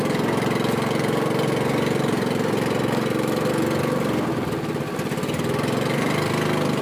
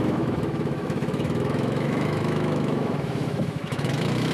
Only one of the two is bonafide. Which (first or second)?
first